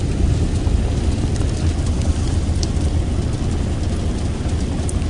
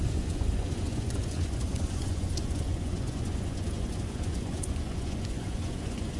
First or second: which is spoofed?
second